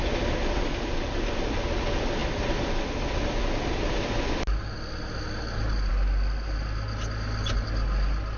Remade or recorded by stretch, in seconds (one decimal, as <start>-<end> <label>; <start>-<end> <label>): 0.0-8.4 recorded